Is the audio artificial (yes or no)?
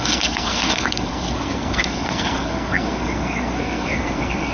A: yes